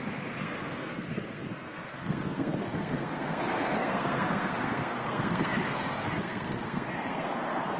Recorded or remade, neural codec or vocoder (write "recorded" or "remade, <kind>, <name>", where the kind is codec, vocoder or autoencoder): remade, codec, SNAC